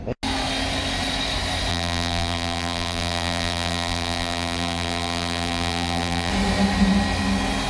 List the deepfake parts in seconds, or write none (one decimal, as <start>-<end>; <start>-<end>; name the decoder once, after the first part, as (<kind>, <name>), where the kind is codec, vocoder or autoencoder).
1.7-6.3 (vocoder, BigVGAN v2)